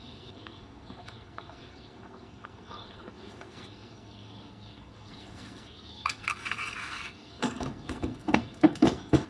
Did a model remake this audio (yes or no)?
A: yes